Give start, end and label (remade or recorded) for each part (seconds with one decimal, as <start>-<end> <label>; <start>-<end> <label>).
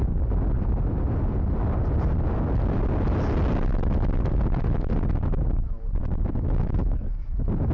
0.0-6.0 recorded; 6.0-7.0 remade; 7.0-7.7 recorded